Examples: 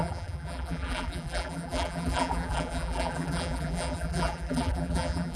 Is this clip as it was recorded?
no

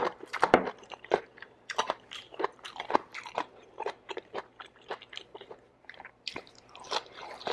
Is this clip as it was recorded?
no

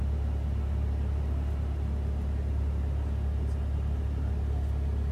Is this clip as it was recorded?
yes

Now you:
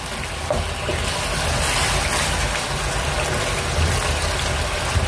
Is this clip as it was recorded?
yes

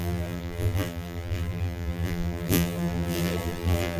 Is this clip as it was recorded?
no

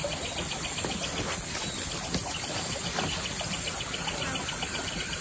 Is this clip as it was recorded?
yes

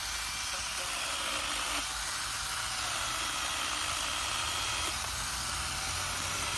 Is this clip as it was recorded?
yes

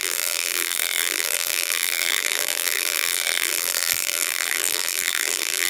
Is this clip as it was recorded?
no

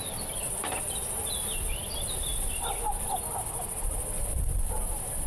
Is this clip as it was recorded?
yes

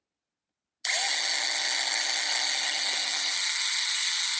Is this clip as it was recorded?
yes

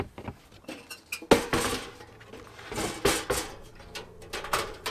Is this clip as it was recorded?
yes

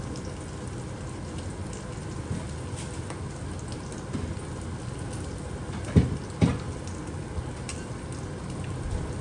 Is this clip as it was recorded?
yes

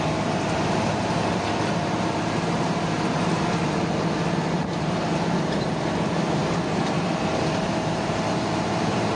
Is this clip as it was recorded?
no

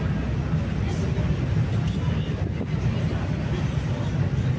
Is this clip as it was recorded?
yes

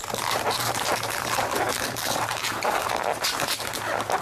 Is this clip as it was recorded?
no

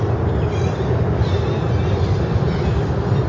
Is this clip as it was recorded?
yes